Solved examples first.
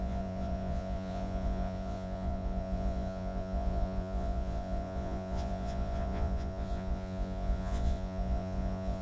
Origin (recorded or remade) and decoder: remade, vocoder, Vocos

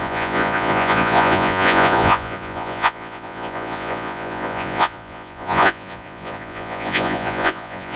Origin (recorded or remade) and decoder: remade, vocoder, Vocos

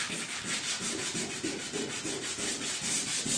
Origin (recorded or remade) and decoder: recorded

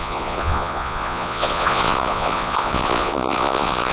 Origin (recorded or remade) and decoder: remade, vocoder, Vocos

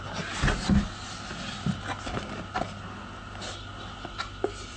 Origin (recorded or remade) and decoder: recorded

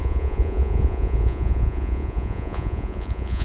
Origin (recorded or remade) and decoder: remade, vocoder, Vocos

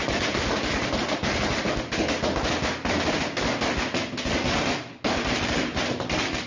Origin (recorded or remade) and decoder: recorded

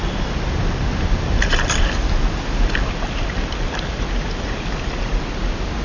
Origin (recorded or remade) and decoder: recorded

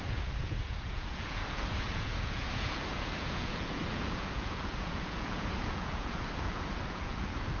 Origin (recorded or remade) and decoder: remade, vocoder, Vocos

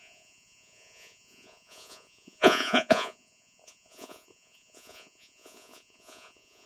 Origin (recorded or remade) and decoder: remade, vocoder, Vocos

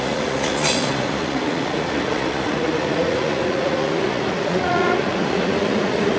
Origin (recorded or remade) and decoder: remade, vocoder, Vocos